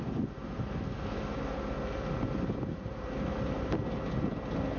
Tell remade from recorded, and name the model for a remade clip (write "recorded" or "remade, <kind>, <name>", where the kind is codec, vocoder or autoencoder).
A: recorded